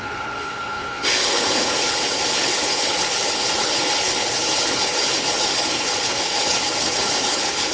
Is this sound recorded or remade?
remade